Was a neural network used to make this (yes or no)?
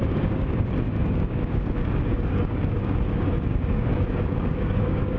yes